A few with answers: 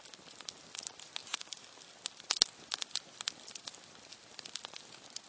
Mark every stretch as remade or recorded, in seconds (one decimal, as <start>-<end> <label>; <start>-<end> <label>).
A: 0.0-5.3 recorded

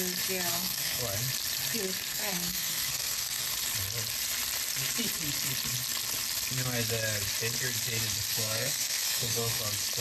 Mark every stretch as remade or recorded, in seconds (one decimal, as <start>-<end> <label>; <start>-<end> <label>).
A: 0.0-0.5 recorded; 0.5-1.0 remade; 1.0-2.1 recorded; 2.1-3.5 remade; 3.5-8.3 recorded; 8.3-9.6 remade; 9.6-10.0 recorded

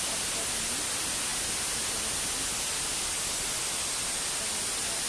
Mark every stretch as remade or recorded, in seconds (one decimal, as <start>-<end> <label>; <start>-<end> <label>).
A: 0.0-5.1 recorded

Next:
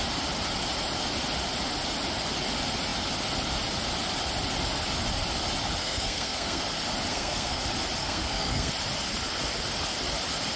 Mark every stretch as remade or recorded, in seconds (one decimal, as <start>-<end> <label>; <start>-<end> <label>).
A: 0.0-5.8 recorded; 5.8-6.6 remade; 6.6-7.1 recorded; 7.1-7.6 remade; 7.6-8.0 recorded; 8.0-8.7 remade; 8.7-10.6 recorded

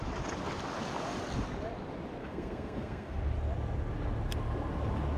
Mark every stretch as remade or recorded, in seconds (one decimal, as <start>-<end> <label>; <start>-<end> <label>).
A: 0.0-2.2 recorded; 2.2-3.2 remade; 3.2-5.2 recorded

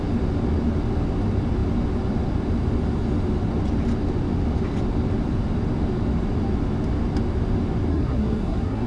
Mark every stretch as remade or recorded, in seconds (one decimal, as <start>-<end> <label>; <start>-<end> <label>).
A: 0.0-7.9 recorded; 7.9-8.9 remade

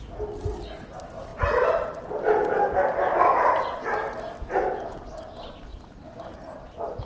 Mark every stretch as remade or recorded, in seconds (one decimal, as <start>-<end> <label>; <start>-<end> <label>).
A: 0.0-7.0 recorded